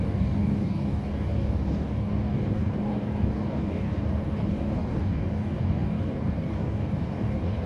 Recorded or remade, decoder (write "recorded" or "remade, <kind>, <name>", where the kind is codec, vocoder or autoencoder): remade, codec, DAC